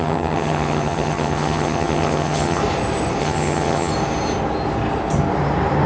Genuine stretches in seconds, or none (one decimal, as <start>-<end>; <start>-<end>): 2.6-3.2; 3.9-5.9